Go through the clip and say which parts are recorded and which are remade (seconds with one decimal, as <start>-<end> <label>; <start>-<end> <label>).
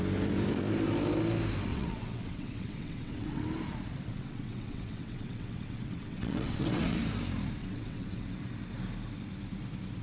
0.0-1.7 recorded; 1.7-3.4 remade; 3.4-4.1 recorded; 4.1-7.0 remade; 7.0-7.6 recorded; 7.6-8.2 remade; 8.2-10.0 recorded